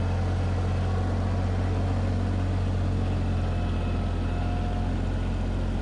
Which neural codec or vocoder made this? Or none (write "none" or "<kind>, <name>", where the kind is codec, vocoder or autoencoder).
none